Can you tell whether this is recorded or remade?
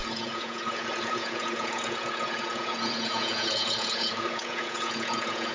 remade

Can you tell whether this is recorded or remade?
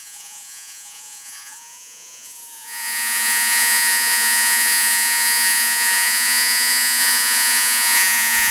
remade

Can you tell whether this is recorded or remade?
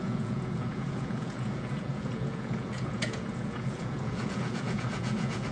remade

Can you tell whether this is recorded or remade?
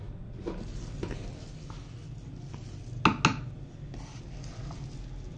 recorded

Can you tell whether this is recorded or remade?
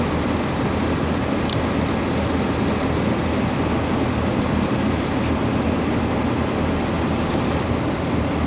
recorded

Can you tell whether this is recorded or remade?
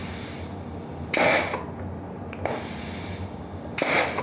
recorded